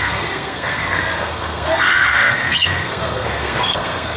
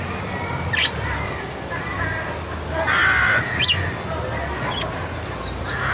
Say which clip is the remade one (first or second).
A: first